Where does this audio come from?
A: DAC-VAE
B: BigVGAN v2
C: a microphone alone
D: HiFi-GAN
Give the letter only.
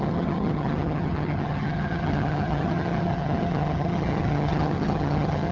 D